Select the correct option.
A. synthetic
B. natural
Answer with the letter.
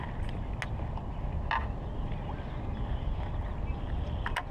B